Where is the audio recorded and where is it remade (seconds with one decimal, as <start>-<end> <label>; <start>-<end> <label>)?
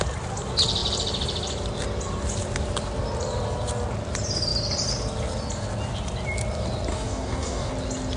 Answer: 0.0-6.9 recorded; 6.9-7.7 remade; 7.7-8.2 recorded